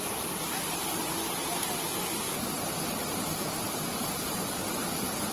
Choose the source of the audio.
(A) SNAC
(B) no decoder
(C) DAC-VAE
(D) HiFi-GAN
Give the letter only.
B